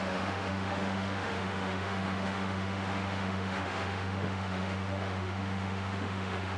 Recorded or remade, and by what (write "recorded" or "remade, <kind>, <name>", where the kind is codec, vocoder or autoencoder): remade, autoencoder, DAC-VAE